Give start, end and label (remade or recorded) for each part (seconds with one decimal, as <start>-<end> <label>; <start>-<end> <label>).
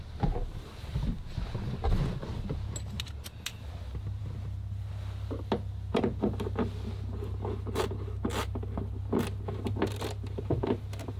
0.0-11.2 recorded